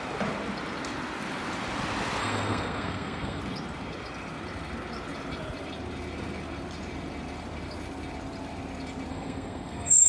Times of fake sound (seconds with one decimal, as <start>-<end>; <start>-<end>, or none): 2.2-3.4; 9.1-10.1